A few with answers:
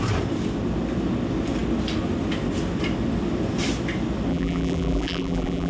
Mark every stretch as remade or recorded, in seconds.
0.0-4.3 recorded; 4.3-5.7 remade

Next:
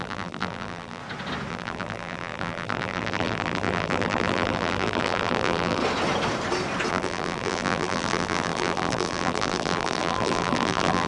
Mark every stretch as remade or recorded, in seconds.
0.0-1.0 remade; 1.0-1.5 recorded; 1.5-5.8 remade; 5.8-6.9 recorded; 6.9-11.1 remade

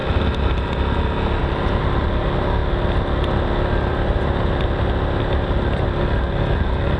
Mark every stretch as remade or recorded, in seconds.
0.0-1.4 recorded; 1.4-2.6 remade; 2.6-3.2 recorded; 3.2-3.9 remade; 3.9-6.2 recorded; 6.2-7.0 remade